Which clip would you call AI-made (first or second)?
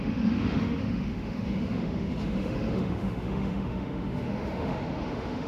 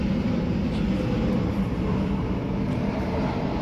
first